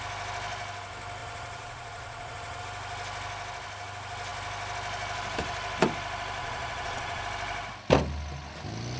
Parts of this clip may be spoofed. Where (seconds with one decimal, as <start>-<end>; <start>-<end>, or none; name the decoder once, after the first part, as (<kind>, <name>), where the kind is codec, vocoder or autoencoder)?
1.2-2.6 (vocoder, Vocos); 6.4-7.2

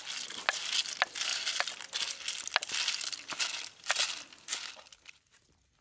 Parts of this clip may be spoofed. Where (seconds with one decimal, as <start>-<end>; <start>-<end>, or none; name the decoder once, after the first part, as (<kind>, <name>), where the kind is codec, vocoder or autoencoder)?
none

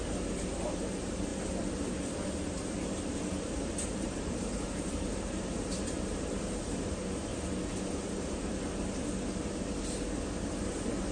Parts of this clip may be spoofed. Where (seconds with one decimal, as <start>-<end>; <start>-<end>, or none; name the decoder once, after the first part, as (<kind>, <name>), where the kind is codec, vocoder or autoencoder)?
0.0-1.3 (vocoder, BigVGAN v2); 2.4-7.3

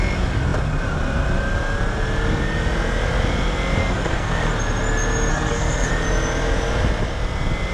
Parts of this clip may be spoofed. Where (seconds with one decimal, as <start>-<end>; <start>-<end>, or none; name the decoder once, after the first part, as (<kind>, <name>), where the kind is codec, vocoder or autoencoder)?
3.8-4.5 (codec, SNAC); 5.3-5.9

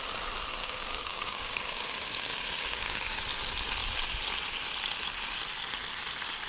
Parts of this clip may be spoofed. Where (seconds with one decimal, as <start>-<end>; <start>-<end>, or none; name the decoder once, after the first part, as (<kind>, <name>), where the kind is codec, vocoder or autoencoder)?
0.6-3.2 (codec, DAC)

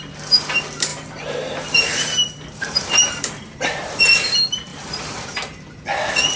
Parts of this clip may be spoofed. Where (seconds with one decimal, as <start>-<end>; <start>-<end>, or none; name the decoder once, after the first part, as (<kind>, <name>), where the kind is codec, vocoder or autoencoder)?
0.9-4.0 (vocoder, BigVGAN v2); 4.7-5.6

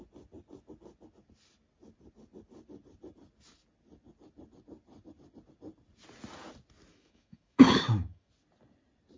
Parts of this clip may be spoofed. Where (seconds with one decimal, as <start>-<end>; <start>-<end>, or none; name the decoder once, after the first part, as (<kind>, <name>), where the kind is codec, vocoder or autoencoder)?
6.9-8.3 (autoencoder, DAC-VAE)